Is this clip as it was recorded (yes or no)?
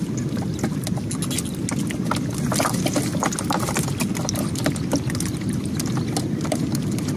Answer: yes